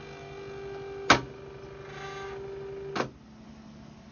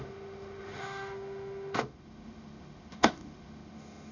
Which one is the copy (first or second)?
second